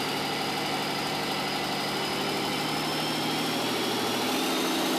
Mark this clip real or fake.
real